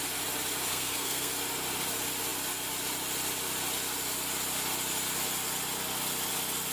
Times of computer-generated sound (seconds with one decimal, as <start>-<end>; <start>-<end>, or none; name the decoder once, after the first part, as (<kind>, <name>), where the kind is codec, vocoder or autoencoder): 0.7-1.3 (codec, SNAC)